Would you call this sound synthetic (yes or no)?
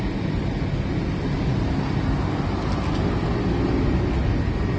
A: no